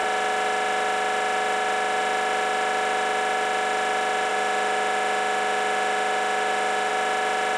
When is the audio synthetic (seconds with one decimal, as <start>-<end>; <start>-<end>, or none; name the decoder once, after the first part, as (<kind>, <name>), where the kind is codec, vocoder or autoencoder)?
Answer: 4.3-6.9 (autoencoder, DAC-VAE)